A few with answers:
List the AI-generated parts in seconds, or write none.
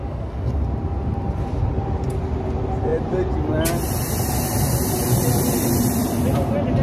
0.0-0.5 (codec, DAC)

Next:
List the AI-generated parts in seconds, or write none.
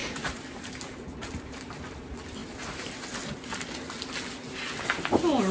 0.0-1.7 (vocoder, BigVGAN v2); 2.4-3.0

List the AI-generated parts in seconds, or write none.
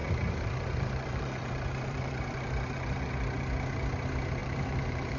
0.0-3.1 (vocoder, BigVGAN v2); 4.4-5.2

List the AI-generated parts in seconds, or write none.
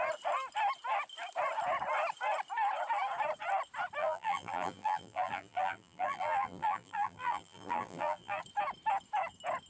4.0-8.4 (vocoder, BigVGAN v2)